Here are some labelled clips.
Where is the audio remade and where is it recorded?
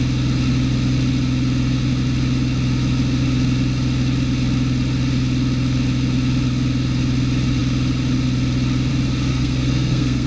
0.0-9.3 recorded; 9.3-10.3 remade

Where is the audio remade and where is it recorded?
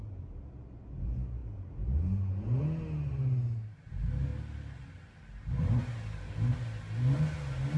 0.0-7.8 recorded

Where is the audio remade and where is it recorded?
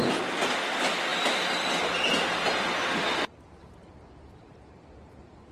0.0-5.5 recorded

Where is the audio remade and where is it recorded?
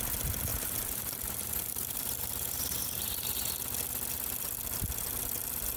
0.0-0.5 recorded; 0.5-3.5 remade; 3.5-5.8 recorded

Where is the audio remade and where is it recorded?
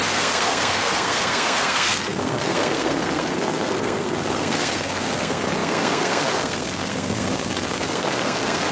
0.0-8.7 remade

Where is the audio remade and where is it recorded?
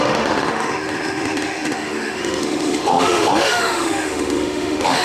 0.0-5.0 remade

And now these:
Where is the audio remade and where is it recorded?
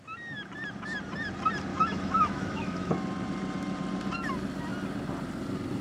0.0-1.7 recorded; 1.7-2.9 remade; 2.9-5.8 recorded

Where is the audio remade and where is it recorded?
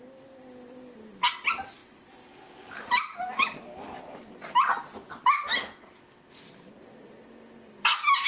0.0-8.3 recorded